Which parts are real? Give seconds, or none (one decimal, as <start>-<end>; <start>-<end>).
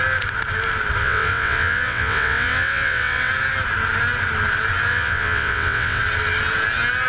0.0-1.0; 3.3-4.9; 6.0-7.1